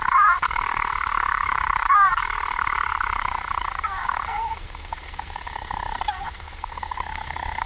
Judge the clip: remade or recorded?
remade